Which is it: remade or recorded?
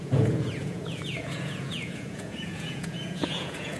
remade